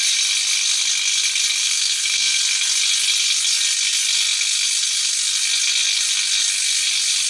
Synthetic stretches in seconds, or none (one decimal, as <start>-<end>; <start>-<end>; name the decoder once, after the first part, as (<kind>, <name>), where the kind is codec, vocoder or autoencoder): 1.6-2.4 (codec, SNAC)